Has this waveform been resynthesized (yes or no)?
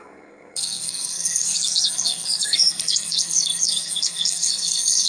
yes